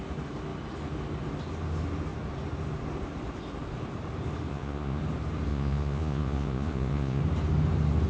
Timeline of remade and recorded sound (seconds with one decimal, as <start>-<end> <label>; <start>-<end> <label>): 0.0-4.5 recorded; 4.5-5.0 remade; 5.0-5.5 recorded; 5.5-7.2 remade; 7.2-8.1 recorded